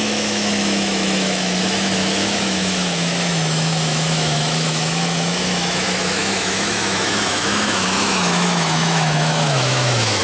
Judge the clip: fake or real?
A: fake